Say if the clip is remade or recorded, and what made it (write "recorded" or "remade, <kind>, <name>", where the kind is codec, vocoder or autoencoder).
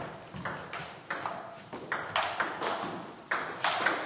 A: recorded